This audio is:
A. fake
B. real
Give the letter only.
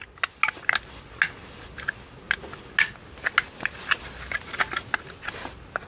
B